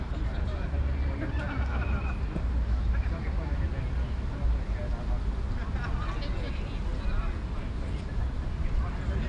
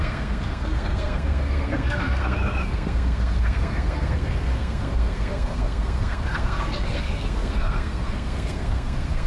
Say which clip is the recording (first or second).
first